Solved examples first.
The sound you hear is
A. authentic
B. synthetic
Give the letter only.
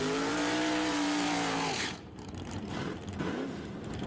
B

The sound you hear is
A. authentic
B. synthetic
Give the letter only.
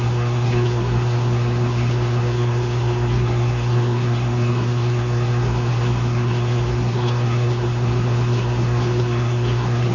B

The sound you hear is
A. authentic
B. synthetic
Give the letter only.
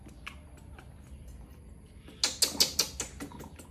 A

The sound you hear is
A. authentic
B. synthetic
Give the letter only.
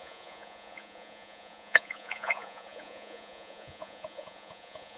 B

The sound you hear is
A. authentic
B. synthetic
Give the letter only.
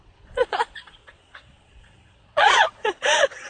B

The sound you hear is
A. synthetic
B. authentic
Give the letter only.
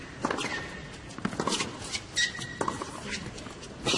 B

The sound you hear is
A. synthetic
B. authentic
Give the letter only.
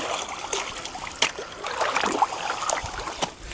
B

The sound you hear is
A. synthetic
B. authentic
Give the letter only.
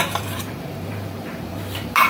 A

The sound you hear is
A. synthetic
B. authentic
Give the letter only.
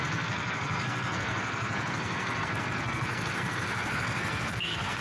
A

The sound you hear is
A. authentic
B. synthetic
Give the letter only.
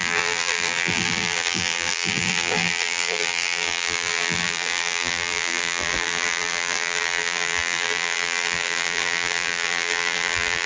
B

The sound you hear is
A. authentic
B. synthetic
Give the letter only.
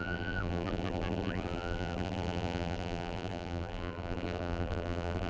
B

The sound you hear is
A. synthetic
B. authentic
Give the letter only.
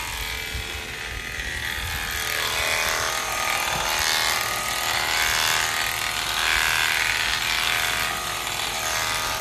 B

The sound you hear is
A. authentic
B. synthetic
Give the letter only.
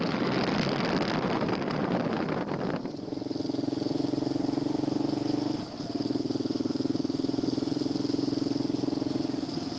A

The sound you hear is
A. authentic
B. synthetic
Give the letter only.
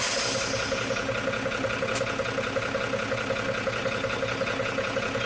A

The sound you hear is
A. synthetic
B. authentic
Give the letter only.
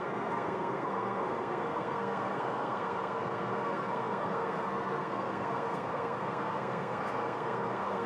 A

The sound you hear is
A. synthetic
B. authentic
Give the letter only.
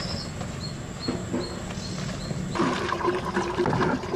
B